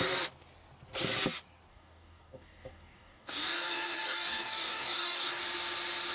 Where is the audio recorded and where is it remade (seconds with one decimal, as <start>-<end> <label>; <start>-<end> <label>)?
0.0-1.7 recorded; 1.7-5.4 remade; 5.4-6.1 recorded